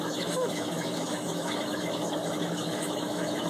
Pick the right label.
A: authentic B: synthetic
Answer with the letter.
B